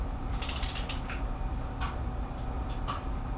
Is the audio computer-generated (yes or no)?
yes